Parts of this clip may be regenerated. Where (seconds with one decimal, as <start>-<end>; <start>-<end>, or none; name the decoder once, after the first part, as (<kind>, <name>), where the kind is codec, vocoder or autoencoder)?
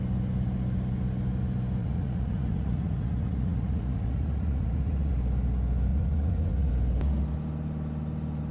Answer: 1.8-5.1 (vocoder, Vocos); 5.9-6.7